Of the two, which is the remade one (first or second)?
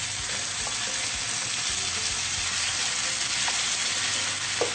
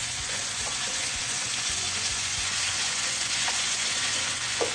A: second